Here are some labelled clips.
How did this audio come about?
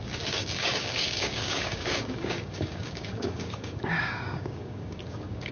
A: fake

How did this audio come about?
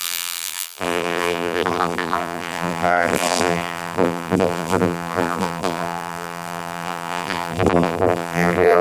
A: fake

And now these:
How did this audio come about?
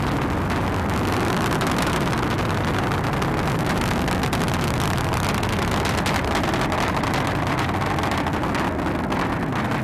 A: real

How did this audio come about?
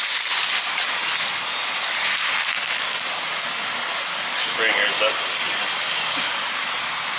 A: real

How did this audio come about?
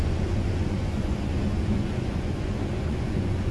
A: fake